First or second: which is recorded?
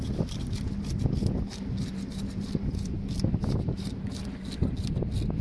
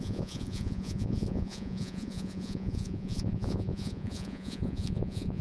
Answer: first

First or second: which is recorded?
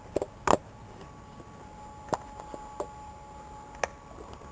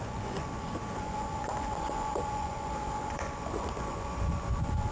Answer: first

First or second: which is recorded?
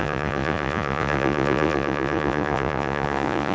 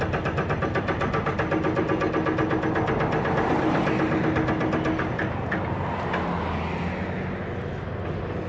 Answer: second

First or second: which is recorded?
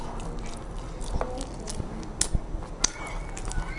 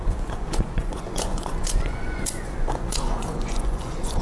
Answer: first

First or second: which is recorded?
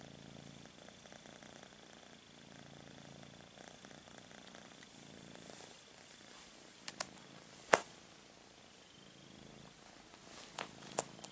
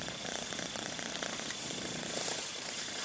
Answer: first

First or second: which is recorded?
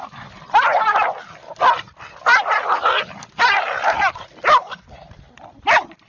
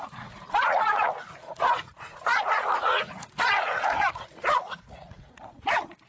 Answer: first